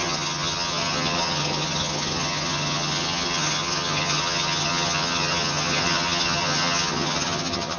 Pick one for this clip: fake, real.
fake